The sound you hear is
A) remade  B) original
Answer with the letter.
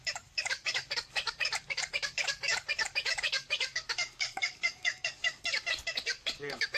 A